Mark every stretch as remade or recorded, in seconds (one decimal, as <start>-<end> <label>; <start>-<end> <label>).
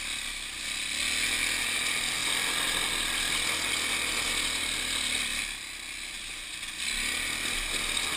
0.0-8.2 recorded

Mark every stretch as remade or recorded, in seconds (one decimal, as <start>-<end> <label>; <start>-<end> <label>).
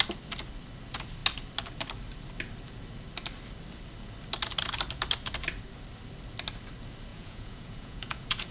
0.0-7.1 recorded; 7.1-8.5 remade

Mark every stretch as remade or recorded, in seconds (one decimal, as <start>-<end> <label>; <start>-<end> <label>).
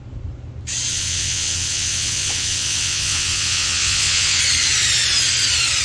0.0-0.9 recorded; 0.9-4.4 remade; 4.4-5.8 recorded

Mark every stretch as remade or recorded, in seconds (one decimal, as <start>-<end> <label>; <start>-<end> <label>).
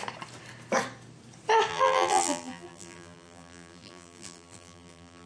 0.0-1.7 recorded; 1.7-5.3 remade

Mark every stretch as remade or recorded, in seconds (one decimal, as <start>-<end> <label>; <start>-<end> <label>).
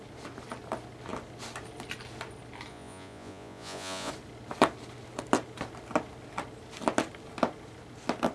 0.0-2.7 recorded; 2.7-4.1 remade; 4.1-8.3 recorded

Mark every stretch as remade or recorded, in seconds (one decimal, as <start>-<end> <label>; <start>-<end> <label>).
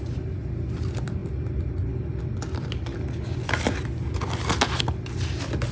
0.0-5.7 recorded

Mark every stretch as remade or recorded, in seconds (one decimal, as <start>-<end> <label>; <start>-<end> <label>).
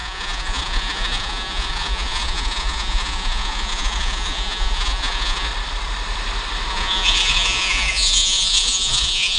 0.0-5.5 remade; 5.5-6.7 recorded; 6.7-9.4 remade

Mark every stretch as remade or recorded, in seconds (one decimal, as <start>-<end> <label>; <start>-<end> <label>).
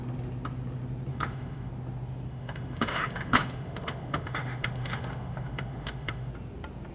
0.0-1.1 recorded; 1.1-1.7 remade; 1.7-2.3 recorded; 2.3-6.3 remade; 6.3-6.9 recorded